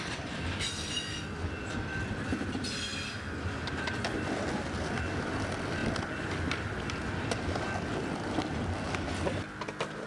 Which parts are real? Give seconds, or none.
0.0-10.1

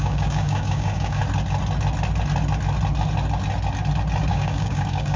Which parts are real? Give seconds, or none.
1.2-4.3